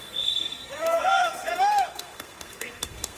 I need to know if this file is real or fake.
fake